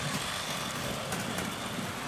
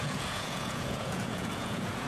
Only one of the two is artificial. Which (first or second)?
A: second